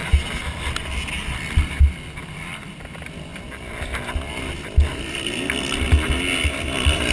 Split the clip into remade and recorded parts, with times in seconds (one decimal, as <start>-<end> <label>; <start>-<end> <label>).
0.0-1.8 remade; 1.8-7.1 recorded